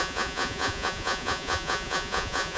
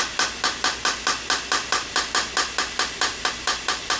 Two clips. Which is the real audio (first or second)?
second